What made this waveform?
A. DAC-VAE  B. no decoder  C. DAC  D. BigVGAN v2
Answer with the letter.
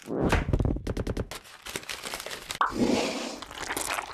B